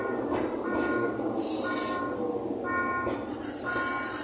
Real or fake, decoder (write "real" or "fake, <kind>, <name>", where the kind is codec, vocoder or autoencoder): real